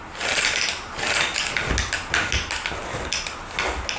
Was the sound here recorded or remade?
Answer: recorded